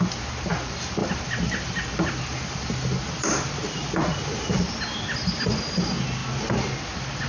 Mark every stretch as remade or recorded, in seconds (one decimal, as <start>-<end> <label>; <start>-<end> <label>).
0.0-1.0 recorded; 1.0-4.8 remade; 4.8-7.3 recorded